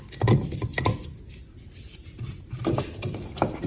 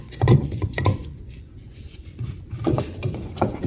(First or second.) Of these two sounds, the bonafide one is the first